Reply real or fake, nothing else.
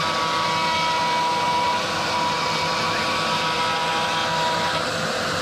real